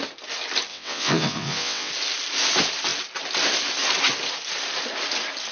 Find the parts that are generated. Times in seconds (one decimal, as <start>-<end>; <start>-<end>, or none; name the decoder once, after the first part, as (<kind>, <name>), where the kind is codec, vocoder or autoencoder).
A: 0.7-1.9 (vocoder, WaveNeXt)